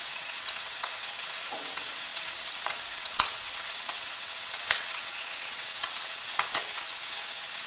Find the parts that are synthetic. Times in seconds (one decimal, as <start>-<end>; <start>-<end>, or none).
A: 0.0-7.7